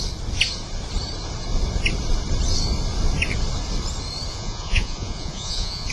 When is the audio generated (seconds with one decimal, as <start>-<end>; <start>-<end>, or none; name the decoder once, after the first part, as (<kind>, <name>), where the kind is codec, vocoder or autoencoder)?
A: 4.3-5.9 (vocoder, Vocos)

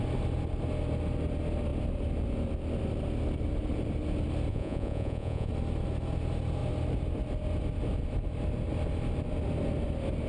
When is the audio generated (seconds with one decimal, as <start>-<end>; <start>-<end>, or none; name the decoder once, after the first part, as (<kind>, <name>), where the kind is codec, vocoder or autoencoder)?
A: 4.5-5.5 (vocoder, Vocos)

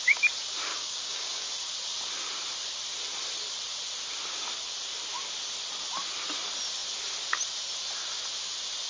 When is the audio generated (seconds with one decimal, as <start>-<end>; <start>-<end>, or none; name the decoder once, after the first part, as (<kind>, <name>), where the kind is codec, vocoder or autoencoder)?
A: 0.7-1.5 (codec, DAC)

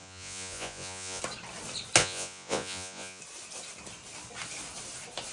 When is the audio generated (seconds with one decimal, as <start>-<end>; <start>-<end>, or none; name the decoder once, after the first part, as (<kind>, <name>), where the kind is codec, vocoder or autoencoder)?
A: 0.0-1.2 (vocoder, Vocos); 2.0-3.2

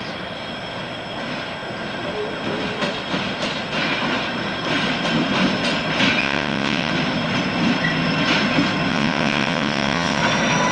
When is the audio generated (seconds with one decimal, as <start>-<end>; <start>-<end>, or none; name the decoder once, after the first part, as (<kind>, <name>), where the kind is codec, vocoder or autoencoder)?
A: 6.2-6.9 (vocoder, WaveNeXt); 8.9-10.2

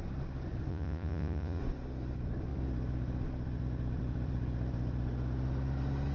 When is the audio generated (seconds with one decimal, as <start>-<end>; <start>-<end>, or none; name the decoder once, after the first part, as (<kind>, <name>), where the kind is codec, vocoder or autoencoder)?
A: 0.7-1.6 (vocoder, Vocos)